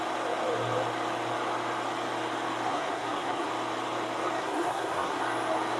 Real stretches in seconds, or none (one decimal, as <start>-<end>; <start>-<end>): 0.0-2.7; 3.5-4.4; 5.2-5.8